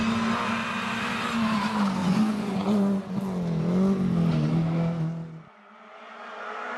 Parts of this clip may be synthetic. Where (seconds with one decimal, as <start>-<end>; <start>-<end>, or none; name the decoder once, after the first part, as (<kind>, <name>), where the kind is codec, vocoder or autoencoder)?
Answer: 2.0-3.1 (vocoder, Vocos)